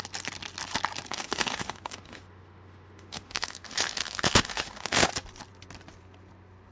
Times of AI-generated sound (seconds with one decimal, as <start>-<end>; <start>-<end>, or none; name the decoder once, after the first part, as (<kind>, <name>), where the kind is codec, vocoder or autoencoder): 1.1-5.1 (autoencoder, DAC-VAE)